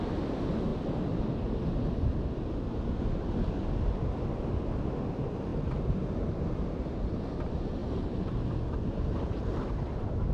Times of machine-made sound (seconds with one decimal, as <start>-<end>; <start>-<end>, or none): 5.5-7.0; 7.8-8.3